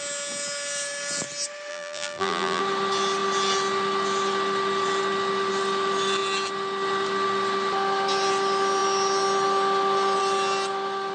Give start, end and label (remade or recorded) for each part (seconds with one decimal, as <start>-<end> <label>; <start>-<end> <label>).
0.0-1.7 recorded; 1.7-2.6 remade; 2.6-11.1 recorded